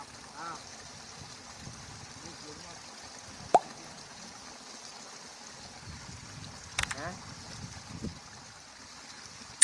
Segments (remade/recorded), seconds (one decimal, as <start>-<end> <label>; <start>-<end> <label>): 0.0-9.6 recorded